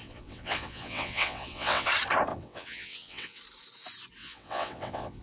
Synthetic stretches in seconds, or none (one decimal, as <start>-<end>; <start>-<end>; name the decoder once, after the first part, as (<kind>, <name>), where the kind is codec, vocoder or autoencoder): 0.0-1.9 (vocoder, WaveNeXt); 2.3-3.4; 4.2-5.2